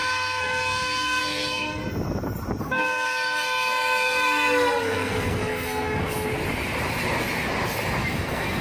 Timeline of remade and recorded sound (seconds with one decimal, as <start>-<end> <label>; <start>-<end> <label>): 0.0-1.8 remade; 1.8-2.6 recorded; 2.6-6.3 remade; 6.3-8.0 recorded; 8.0-8.6 remade